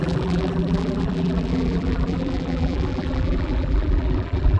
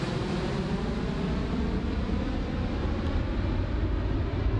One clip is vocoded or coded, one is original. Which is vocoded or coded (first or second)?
first